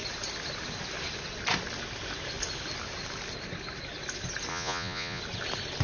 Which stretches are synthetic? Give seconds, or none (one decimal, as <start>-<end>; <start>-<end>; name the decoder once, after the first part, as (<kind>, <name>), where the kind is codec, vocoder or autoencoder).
4.5-5.2 (vocoder, Vocos)